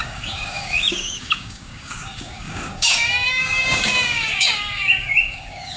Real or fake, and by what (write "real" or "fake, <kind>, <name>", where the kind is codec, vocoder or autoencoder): fake, codec, DAC